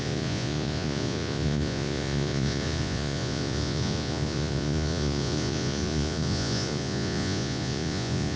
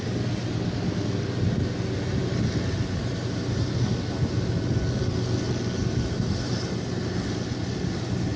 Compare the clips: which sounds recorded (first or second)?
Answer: second